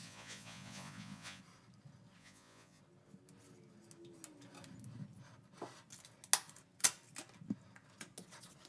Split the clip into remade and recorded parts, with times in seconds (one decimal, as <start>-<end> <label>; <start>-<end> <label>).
0.0-1.4 remade; 1.4-2.2 recorded; 2.2-2.8 remade; 2.8-8.7 recorded